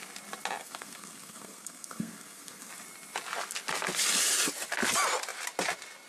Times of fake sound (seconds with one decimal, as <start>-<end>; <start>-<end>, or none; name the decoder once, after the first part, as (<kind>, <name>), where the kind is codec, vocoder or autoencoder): 0.6-2.7 (codec, SNAC)